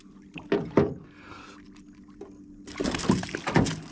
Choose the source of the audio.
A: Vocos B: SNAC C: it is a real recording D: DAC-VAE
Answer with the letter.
C